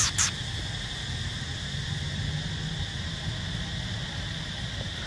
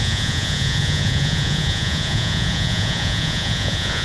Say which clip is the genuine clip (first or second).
first